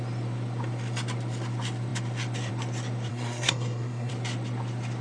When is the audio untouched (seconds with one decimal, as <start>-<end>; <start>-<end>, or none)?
0.0-3.1; 4.1-5.0